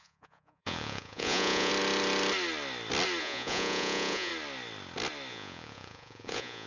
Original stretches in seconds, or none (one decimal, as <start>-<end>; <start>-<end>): 1.7-3.2; 4.3-5.3